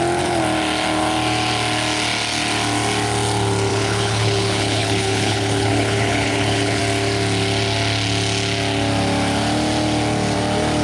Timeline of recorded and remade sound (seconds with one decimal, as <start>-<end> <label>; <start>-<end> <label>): 0.0-3.7 recorded; 3.7-6.8 remade; 6.8-10.8 recorded